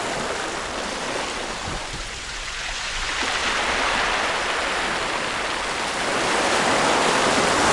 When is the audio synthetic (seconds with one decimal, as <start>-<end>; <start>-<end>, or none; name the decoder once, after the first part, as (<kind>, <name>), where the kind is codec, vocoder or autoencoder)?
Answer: 1.6-3.2 (vocoder, Vocos)